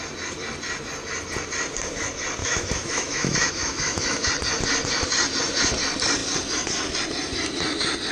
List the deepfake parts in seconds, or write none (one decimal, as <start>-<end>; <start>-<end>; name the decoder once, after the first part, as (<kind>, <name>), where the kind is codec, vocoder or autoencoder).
2.4-4.3 (autoencoder, DAC-VAE)